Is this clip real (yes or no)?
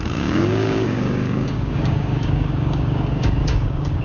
no